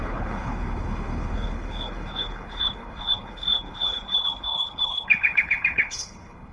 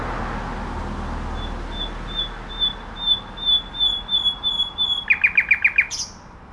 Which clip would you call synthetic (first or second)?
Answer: first